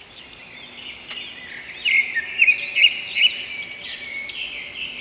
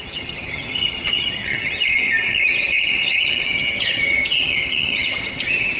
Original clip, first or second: first